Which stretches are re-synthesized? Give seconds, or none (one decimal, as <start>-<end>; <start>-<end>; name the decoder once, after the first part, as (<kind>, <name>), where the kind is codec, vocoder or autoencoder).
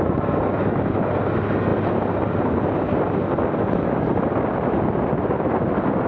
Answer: none